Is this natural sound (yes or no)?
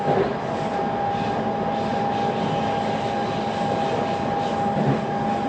yes